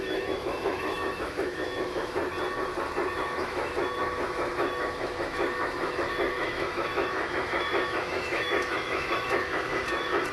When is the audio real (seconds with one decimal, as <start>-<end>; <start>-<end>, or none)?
2.2-3.1